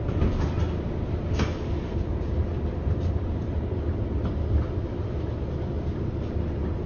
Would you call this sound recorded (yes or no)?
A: yes